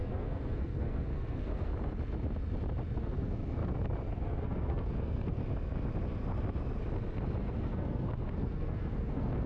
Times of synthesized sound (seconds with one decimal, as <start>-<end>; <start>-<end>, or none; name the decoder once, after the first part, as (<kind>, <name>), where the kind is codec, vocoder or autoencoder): 0.0-1.7 (codec, SNAC); 3.0-3.6; 4.1-5.4; 7.4-9.5